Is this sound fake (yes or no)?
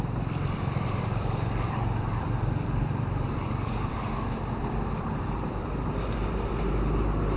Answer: yes